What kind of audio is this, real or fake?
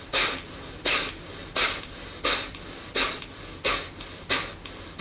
real